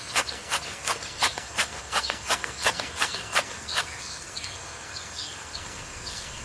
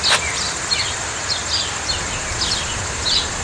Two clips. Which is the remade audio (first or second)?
first